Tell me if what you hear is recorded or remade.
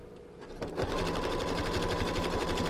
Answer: recorded